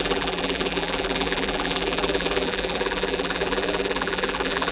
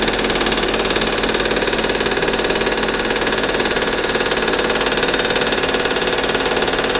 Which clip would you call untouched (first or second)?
second